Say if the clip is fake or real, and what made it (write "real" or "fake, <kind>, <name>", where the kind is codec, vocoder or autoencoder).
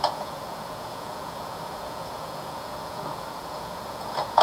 fake, vocoder, Vocos